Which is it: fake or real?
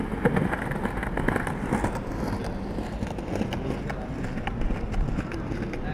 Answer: real